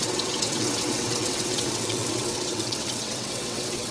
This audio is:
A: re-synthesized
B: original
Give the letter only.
A